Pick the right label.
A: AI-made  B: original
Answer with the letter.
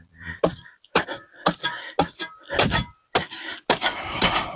B